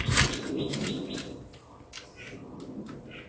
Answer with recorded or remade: recorded